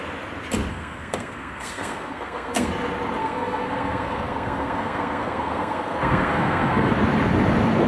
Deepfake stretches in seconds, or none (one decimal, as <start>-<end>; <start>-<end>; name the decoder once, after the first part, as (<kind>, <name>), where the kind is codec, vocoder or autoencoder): 0.7-2.7 (codec, SNAC); 3.2-6.9